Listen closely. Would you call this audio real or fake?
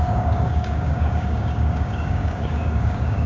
fake